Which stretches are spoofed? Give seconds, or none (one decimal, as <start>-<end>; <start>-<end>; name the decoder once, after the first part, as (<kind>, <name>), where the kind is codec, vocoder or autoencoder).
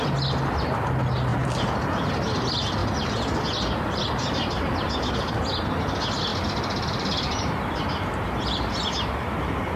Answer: 1.3-2.1 (vocoder, BigVGAN v2); 6.3-8.7